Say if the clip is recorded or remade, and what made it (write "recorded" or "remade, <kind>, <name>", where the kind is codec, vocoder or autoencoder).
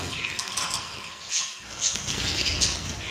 remade, codec, SNAC